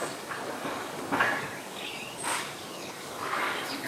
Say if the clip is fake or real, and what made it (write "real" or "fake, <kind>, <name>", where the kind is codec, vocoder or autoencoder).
fake, codec, DAC